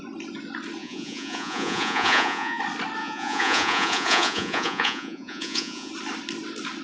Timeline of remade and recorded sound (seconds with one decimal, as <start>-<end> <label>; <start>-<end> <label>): 0.0-0.8 recorded; 0.8-2.6 remade; 2.6-3.0 recorded; 3.0-5.9 remade; 5.9-6.8 recorded